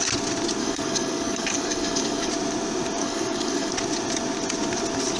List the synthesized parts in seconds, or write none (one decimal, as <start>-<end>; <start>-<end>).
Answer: 0.6-2.3; 3.0-3.7